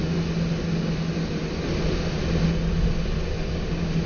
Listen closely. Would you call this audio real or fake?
real